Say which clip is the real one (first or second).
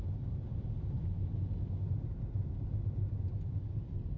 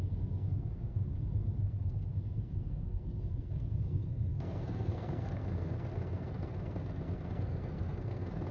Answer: first